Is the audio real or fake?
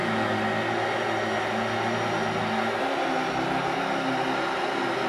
real